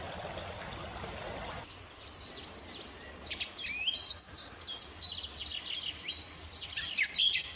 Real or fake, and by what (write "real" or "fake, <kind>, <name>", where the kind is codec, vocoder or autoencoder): real